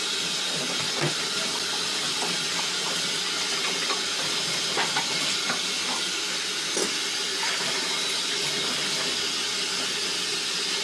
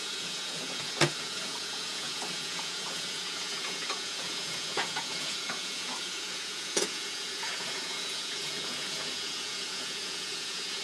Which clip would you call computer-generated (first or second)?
second